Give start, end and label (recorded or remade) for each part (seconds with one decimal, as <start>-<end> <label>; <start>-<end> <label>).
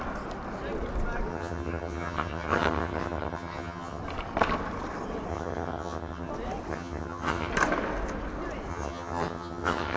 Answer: 0.0-1.3 recorded; 1.3-4.0 remade; 4.0-5.3 recorded; 5.3-6.3 remade; 6.3-6.7 recorded; 6.7-7.5 remade; 7.5-8.7 recorded; 8.7-10.0 remade